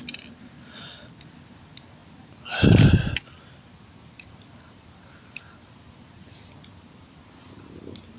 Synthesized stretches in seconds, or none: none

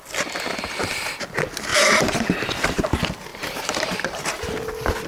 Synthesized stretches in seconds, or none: 1.7-2.8 (vocoder, BigVGAN v2); 3.3-4.4

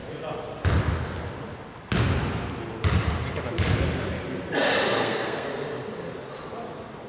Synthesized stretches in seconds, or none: 5.0-5.5 (codec, SNAC)

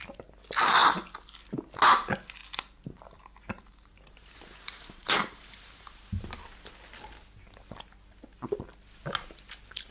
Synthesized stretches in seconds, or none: 2.4-6.2 (vocoder, BigVGAN v2)

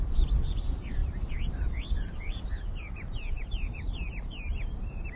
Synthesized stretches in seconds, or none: 0.0-5.2 (vocoder, BigVGAN v2)

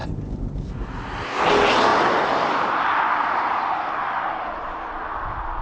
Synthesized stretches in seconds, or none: none

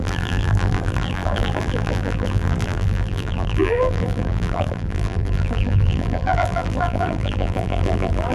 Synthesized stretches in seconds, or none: 0.0-8.3 (vocoder, BigVGAN v2)